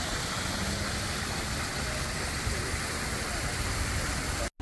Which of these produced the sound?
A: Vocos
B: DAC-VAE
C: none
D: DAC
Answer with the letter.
C